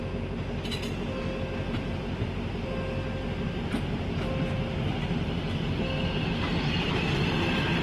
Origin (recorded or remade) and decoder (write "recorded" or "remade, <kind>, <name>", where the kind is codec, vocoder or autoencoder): recorded